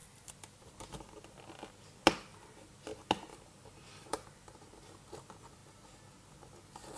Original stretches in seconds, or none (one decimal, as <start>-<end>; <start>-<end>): 0.0-2.3; 2.8-3.3; 5.0-7.0